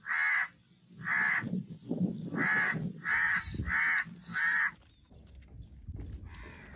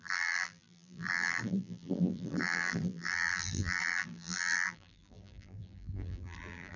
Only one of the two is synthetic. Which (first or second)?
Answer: second